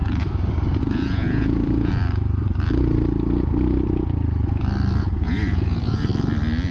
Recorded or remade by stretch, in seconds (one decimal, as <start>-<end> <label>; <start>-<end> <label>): 0.0-0.8 recorded; 0.8-1.9 remade; 1.9-5.0 recorded; 5.0-6.1 remade; 6.1-6.7 recorded